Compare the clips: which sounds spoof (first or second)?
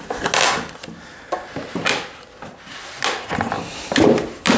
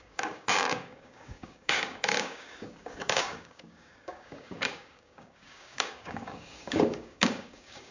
second